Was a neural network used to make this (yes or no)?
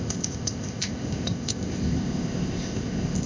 yes